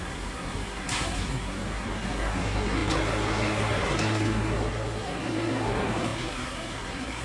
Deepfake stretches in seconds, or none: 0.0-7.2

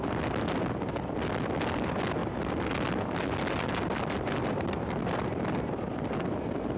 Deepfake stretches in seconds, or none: none

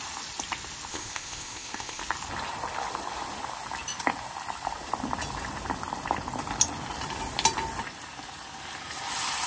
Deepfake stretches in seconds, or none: 0.9-2.0